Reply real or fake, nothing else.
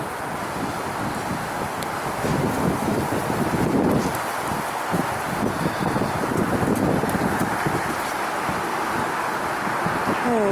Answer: fake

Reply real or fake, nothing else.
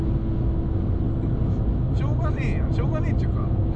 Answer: real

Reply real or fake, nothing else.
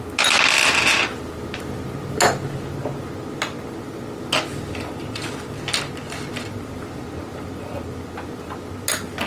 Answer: real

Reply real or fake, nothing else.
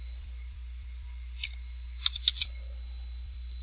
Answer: fake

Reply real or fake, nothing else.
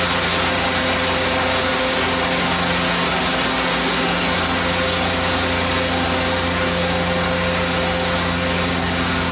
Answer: real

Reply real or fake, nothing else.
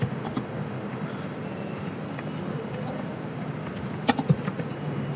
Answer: real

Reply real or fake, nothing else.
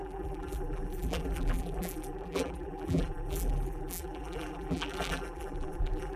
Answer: fake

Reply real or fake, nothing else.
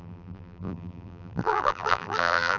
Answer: fake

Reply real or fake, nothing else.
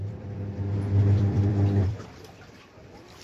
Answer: fake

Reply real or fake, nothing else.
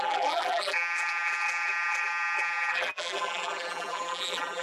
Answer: fake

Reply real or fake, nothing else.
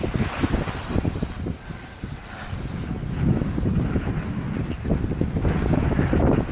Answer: real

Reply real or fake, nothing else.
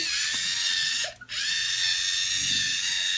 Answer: real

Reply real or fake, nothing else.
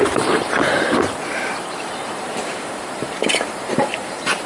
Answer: fake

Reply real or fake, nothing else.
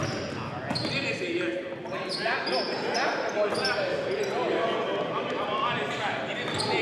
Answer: real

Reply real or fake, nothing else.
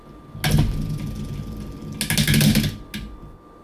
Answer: real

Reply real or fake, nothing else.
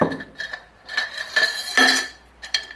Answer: fake